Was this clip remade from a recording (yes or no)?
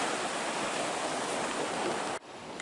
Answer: no